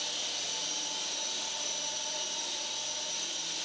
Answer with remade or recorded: recorded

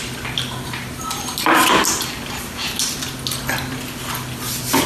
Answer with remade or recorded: recorded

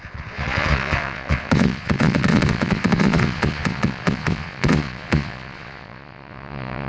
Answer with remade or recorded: remade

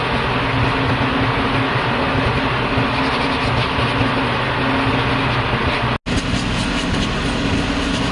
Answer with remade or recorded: recorded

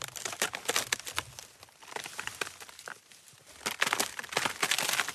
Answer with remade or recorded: recorded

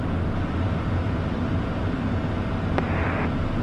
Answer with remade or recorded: recorded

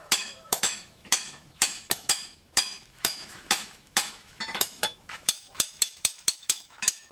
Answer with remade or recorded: remade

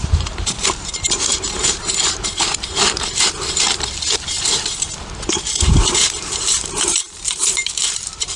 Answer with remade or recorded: remade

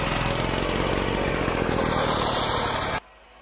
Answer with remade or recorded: recorded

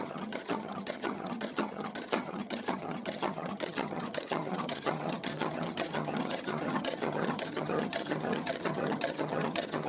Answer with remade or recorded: remade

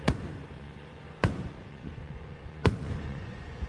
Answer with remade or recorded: remade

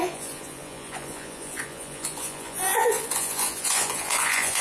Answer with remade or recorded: remade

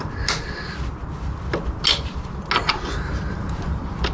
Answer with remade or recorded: recorded